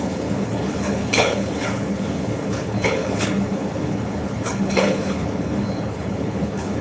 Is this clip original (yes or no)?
no